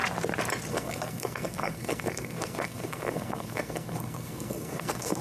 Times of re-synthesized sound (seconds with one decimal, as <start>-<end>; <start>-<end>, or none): 0.7-5.2